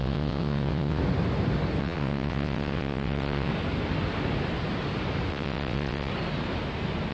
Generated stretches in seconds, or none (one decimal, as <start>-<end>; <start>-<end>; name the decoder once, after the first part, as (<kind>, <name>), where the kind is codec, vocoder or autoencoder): 0.0-1.0 (vocoder, WaveNeXt); 1.8-3.5; 5.3-6.1